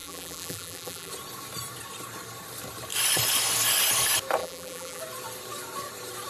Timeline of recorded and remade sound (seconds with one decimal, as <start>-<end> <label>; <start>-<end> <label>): 0.0-1.1 remade; 1.1-4.4 recorded; 4.4-5.0 remade; 5.0-6.3 recorded

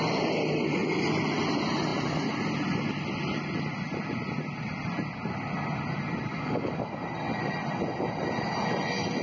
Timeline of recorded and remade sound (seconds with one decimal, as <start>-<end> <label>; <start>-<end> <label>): 0.0-6.3 recorded; 6.3-7.0 remade; 7.0-9.2 recorded